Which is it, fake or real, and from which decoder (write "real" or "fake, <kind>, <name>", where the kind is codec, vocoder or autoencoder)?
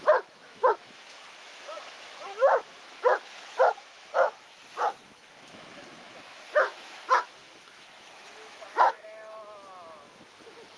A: fake, autoencoder, DAC-VAE